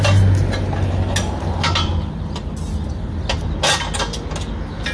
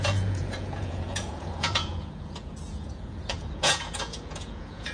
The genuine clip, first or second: first